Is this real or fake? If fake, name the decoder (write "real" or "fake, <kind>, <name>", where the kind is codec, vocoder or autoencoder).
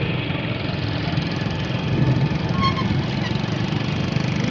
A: real